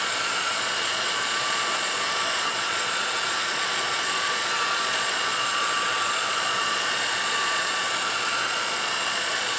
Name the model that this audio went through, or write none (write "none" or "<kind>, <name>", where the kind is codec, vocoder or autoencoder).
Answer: vocoder, Vocos